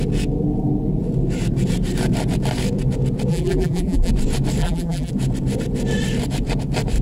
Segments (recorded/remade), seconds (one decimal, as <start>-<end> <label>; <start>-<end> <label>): 0.0-3.3 recorded; 3.3-4.1 remade; 4.1-4.6 recorded; 4.6-5.1 remade; 5.1-7.0 recorded